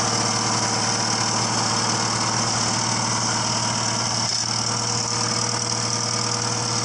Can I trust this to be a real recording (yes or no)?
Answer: yes